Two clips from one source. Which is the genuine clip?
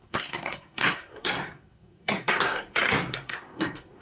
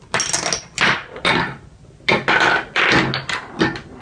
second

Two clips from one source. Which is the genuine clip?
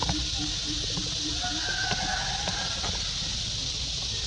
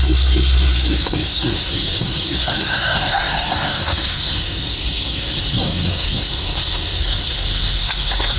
first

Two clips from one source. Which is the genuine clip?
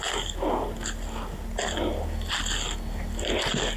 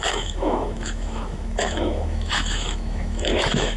first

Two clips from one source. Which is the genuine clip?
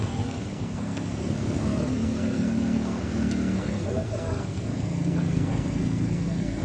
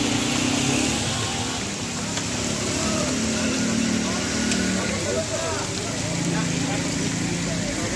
second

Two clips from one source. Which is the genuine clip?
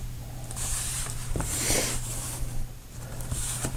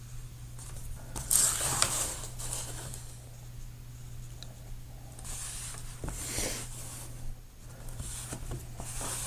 second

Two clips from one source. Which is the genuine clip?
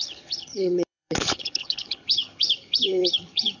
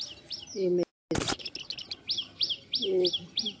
second